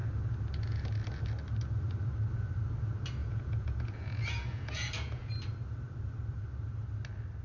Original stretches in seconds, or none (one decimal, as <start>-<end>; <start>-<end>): 0.0-3.2; 5.3-7.4